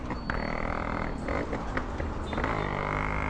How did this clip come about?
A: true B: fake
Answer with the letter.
A